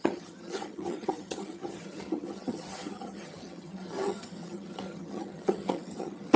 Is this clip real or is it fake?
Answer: fake